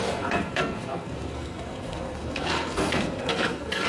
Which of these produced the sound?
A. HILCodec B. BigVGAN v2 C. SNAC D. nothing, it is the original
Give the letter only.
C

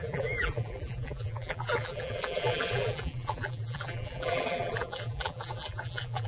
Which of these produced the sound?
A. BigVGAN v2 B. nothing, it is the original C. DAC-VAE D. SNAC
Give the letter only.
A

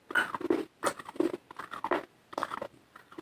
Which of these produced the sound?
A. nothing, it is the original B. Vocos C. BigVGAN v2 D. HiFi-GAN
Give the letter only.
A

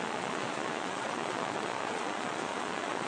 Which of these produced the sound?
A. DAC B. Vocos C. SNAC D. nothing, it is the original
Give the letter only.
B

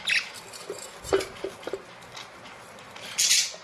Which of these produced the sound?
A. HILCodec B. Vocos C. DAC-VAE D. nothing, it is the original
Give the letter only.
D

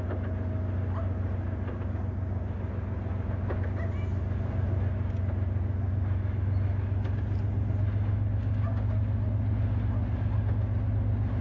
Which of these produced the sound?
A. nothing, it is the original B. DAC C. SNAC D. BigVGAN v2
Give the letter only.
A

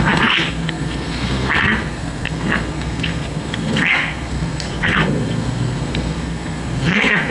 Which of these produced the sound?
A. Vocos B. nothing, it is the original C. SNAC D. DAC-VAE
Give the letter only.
C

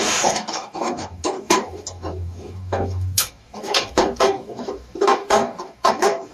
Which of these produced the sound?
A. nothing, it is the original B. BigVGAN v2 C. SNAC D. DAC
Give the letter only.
D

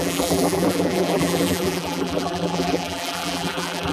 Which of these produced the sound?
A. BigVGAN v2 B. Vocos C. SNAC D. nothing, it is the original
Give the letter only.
A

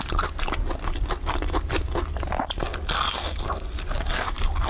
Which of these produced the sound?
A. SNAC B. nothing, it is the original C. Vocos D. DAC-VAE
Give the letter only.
B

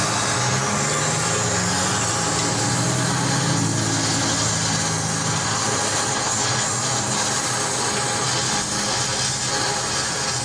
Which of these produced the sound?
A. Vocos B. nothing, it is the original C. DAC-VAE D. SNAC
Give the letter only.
B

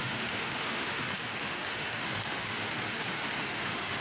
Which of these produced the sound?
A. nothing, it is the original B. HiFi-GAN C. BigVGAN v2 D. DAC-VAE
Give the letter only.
D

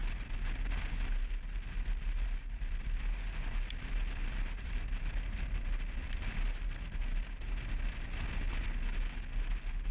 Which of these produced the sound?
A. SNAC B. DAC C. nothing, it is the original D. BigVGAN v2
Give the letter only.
C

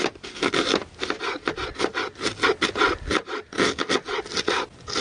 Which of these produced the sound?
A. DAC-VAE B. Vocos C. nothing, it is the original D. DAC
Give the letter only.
C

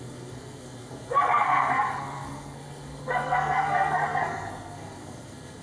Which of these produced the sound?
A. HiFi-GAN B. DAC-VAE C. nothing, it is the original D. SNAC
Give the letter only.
D